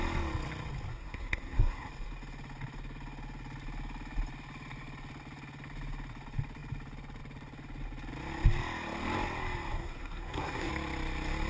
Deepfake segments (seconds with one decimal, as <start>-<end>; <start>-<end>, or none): 0.9-1.9; 9.7-10.7